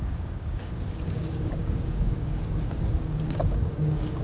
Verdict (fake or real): fake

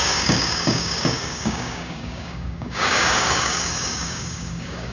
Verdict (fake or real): fake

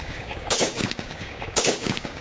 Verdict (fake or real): fake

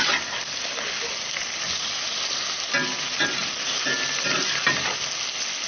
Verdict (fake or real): real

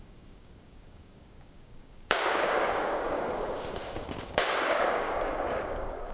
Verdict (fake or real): fake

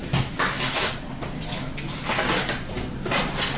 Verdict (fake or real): real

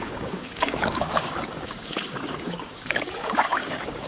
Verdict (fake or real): fake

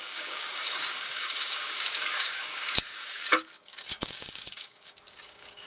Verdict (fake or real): fake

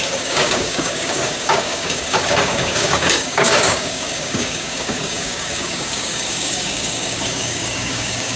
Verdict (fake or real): fake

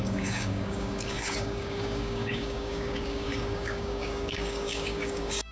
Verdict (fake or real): fake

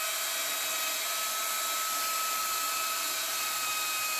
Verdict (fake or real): real